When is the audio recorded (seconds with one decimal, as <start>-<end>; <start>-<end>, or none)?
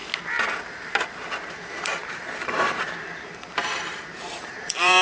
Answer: 0.0-1.2